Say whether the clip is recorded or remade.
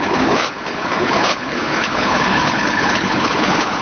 remade